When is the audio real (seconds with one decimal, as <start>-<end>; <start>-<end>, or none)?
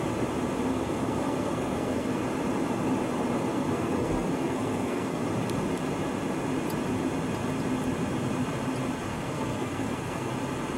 0.0-0.7; 2.2-3.5; 5.2-9.1; 10.3-10.8